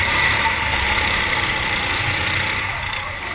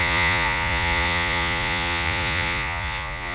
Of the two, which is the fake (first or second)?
second